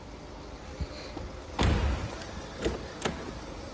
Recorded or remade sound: recorded